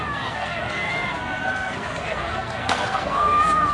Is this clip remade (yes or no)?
yes